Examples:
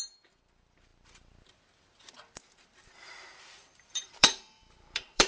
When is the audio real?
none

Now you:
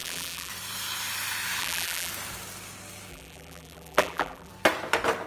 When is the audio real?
0.5-1.6; 2.1-3.1; 4.5-5.3

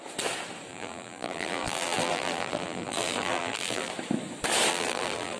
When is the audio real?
0.0-0.7; 3.9-4.7

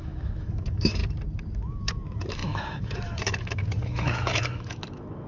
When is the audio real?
1.0-1.6

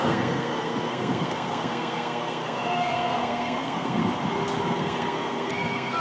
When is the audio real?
4.0-4.6

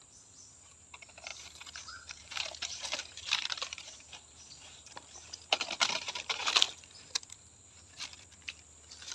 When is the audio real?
0.0-1.3; 6.5-9.1